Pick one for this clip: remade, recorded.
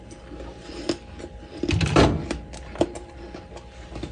recorded